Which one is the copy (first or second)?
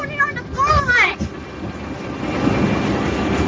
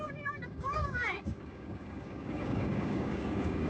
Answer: second